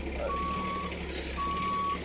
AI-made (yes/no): no